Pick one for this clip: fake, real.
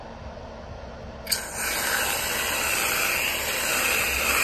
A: real